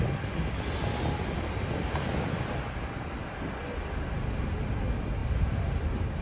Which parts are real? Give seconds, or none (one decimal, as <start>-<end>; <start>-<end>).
0.0-6.2